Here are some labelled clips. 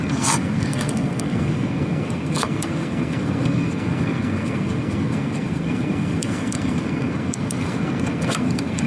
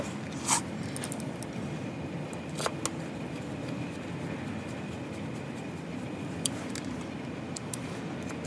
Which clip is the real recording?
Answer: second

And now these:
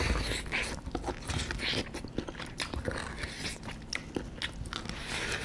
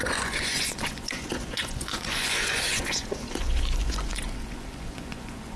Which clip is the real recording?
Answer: first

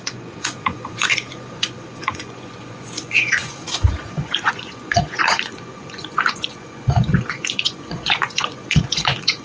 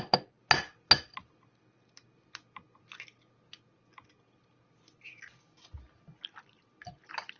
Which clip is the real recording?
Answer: second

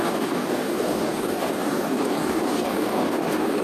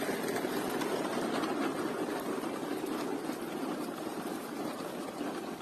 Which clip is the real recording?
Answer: second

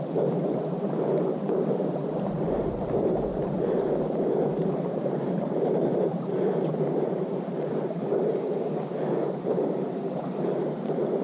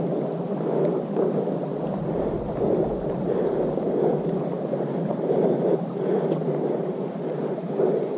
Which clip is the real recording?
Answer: second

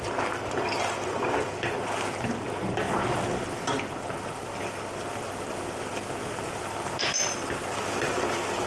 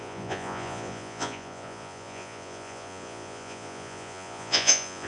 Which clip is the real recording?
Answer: first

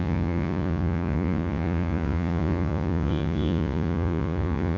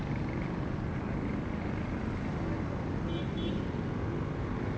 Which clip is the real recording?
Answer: second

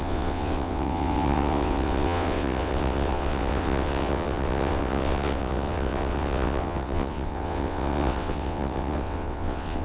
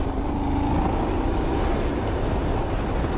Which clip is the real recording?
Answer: second